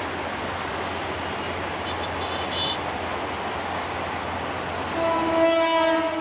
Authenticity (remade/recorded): recorded